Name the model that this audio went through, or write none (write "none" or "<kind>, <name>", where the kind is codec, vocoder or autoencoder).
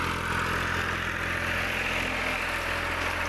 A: none